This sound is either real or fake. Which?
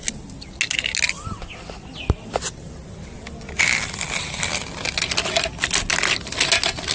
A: real